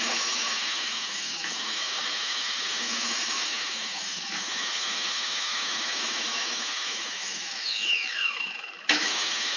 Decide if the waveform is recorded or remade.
remade